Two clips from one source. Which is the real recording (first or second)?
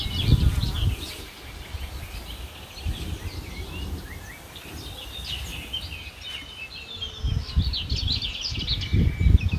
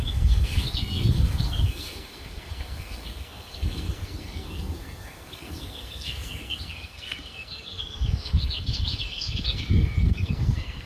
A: first